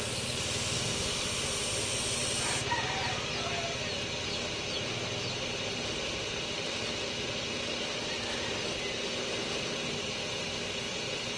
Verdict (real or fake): real